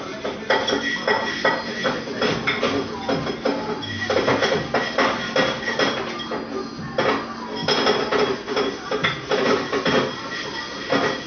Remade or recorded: recorded